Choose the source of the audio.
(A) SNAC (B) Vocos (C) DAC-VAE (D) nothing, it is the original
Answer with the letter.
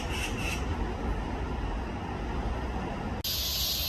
D